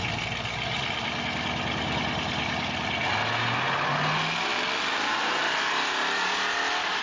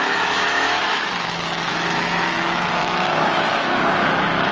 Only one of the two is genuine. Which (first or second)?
first